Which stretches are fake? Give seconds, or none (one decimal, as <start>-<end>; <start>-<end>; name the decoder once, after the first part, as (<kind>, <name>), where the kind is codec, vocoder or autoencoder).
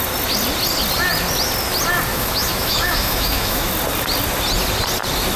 2.1-3.7 (autoencoder, DAC-VAE)